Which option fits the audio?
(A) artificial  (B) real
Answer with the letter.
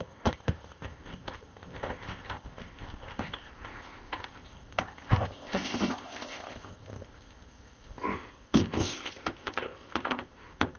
A